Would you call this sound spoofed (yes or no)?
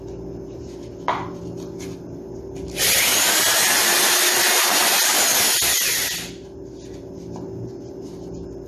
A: no